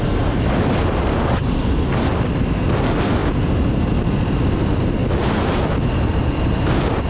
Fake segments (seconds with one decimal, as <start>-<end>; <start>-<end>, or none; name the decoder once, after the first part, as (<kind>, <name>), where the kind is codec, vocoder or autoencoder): 0.0-3.2 (vocoder, BigVGAN v2); 4.3-5.0; 6.1-7.1